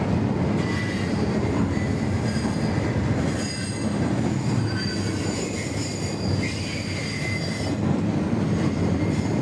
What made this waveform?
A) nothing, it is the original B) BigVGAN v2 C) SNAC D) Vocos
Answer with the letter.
A